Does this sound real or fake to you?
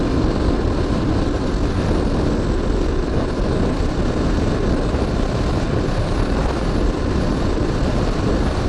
fake